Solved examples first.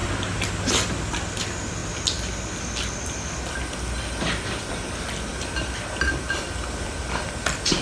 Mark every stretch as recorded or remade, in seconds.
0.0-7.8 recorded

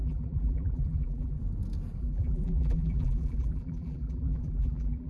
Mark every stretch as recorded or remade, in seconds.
0.0-1.4 remade; 1.4-2.0 recorded; 2.0-5.1 remade